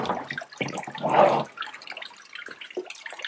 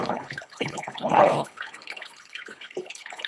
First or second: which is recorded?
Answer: first